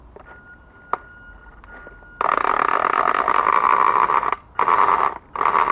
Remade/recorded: recorded